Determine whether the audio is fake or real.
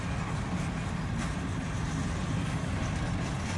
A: real